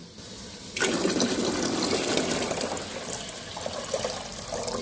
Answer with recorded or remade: recorded